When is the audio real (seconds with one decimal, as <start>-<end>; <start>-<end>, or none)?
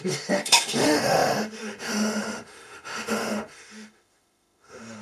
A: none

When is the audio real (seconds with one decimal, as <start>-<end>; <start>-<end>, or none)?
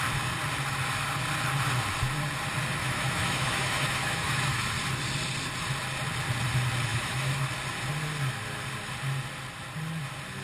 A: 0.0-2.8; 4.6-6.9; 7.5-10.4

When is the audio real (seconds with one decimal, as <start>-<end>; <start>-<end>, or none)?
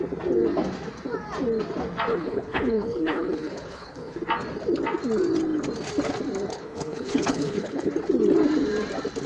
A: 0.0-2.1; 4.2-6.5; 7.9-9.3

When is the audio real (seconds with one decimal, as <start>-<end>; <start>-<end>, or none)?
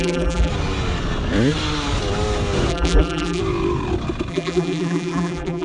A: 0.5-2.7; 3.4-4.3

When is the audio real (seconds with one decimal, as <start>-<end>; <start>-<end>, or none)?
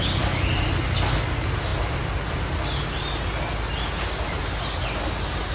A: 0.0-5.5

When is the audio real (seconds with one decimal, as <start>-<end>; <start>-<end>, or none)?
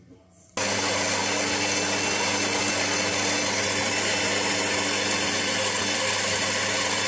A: 0.0-7.1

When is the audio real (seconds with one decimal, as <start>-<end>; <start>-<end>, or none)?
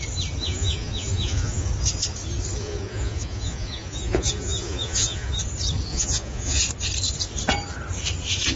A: 0.0-0.4; 1.7-2.6; 5.3-5.9; 6.6-8.6